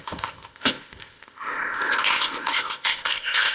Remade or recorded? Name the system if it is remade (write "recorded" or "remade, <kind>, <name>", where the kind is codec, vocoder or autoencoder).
remade, codec, ZipCodec